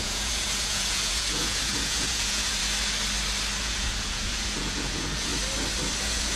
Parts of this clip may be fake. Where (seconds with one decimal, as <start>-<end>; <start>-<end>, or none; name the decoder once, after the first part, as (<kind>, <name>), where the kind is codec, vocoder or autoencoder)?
0.0-2.6 (vocoder, Vocos); 3.6-5.3; 6.0-6.4